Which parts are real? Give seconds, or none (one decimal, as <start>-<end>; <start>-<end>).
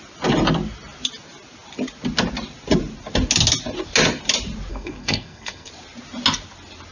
0.0-4.7; 5.7-6.9